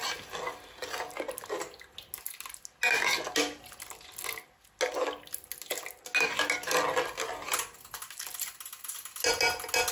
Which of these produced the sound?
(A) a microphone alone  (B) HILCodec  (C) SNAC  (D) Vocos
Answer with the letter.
A